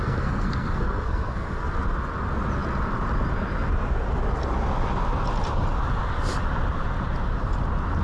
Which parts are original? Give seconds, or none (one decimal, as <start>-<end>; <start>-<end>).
1.7-8.0